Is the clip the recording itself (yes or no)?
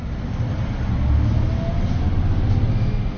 yes